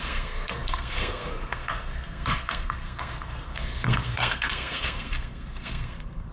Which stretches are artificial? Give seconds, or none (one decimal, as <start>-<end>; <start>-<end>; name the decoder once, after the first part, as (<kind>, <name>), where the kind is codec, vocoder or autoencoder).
0.0-6.3 (codec, SNAC)